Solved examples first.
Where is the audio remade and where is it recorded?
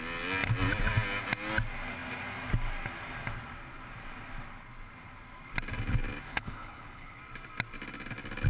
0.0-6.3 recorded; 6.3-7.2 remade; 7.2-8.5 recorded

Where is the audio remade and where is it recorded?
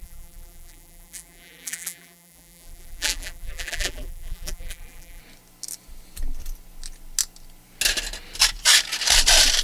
0.0-5.2 remade; 5.2-9.6 recorded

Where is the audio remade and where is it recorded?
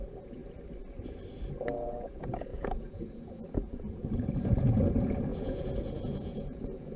0.0-0.4 remade; 0.4-1.6 recorded; 1.6-7.0 remade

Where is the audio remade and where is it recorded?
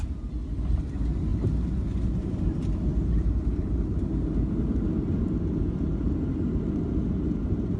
0.0-1.3 recorded; 1.3-2.5 remade; 2.5-7.8 recorded